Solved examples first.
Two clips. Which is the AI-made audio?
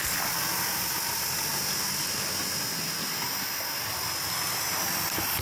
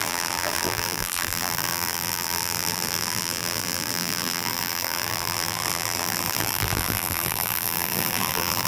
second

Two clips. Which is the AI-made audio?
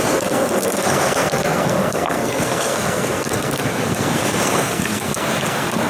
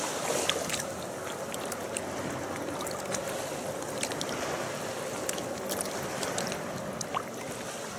first